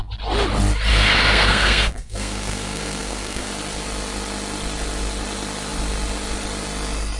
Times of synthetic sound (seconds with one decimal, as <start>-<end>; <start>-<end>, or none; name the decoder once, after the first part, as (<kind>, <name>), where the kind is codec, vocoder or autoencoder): 0.9-3.5 (codec, SNAC)

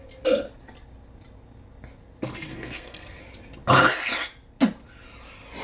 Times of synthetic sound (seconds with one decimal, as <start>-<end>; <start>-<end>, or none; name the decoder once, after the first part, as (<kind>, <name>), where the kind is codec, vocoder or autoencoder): 2.5-3.2 (codec, SNAC)

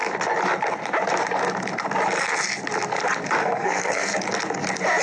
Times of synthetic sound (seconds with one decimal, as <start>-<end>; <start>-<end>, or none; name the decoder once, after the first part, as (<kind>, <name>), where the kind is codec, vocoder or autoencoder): 3.4-4.1 (codec, SNAC)